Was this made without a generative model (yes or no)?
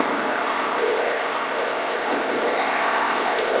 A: no